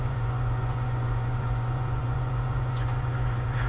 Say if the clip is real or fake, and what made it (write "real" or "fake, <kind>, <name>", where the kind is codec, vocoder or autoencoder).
fake, vocoder, Vocos